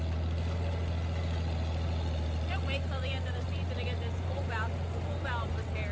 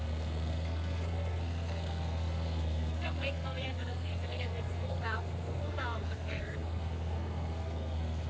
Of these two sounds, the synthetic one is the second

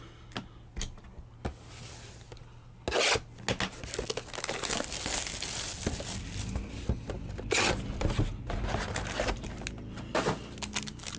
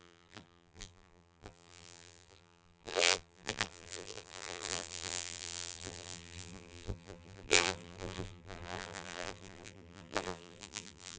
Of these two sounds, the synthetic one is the second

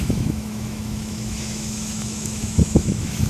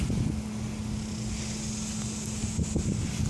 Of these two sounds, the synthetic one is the first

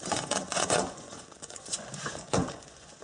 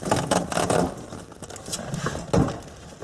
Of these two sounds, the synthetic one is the first